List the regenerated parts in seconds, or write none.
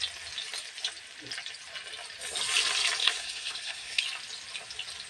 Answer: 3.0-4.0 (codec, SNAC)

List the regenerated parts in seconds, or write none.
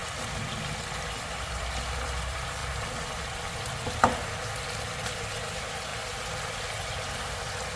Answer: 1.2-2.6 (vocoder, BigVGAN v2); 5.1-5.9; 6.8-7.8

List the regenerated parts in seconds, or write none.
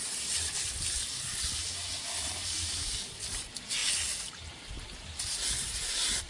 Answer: 2.6-3.1 (codec, DAC)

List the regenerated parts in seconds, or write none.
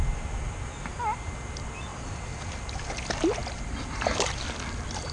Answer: 1.9-2.5 (vocoder, BigVGAN v2)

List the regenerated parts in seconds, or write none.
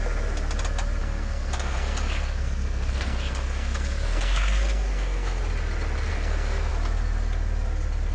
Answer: 1.0-5.4 (codec, SNAC); 6.1-6.7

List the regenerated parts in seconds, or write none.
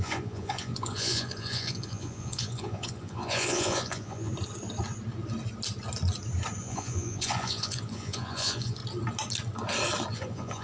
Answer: 0.0-4.3 (vocoder, Vocos); 6.6-8.8; 10.1-10.6